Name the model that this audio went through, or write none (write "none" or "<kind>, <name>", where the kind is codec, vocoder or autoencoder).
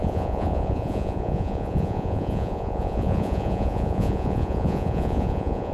vocoder, Vocos